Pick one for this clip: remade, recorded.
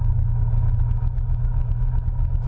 remade